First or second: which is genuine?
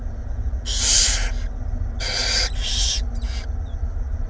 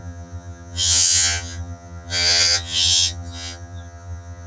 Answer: first